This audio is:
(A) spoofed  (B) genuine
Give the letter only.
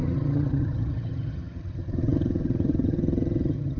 A